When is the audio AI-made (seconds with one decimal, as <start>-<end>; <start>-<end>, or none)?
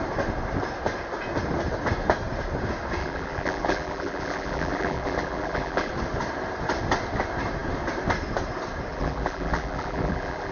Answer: 3.0-5.9; 8.9-10.5